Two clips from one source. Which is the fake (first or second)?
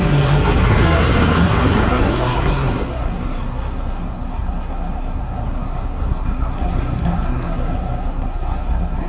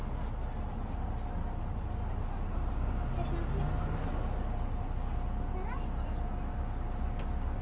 first